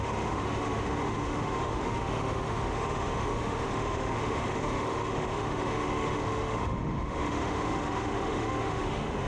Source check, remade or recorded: remade